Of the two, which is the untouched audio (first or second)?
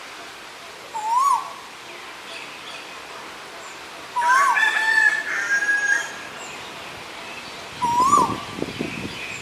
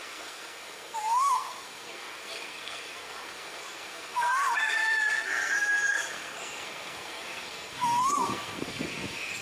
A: first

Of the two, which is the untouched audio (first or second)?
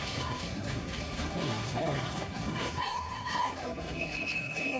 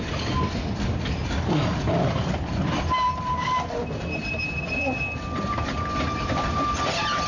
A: second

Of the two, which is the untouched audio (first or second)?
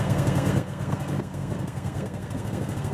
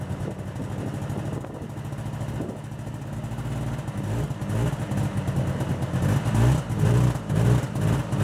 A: second